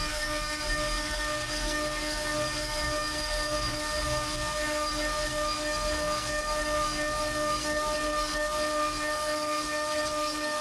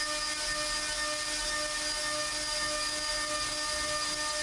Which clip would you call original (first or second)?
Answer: second